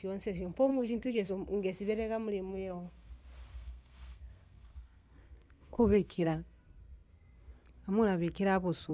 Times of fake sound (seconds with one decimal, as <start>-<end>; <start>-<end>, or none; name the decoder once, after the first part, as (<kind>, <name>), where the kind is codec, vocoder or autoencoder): 0.7-1.3 (codec, SNAC); 2.5-3.1; 3.5-6.6